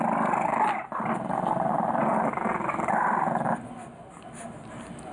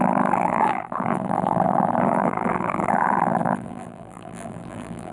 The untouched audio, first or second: first